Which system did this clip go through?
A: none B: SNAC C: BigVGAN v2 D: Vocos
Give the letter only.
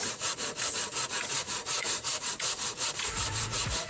D